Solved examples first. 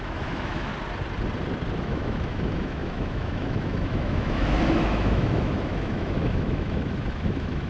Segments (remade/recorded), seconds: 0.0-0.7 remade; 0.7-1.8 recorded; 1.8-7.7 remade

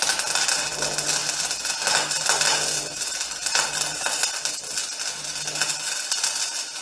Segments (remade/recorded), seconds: 0.0-6.8 recorded

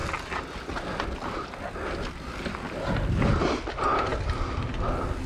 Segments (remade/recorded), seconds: 0.0-5.3 recorded

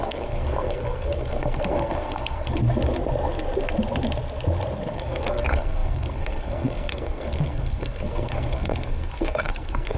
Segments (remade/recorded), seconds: 0.0-2.6 remade; 2.6-4.9 recorded; 4.9-10.0 remade

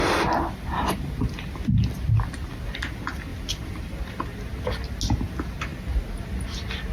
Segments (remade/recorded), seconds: 0.0-3.3 recorded; 3.3-4.0 remade; 4.0-5.7 recorded; 5.7-6.4 remade; 6.4-6.9 recorded